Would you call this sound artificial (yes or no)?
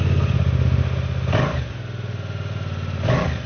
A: no